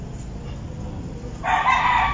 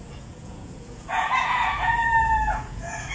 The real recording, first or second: first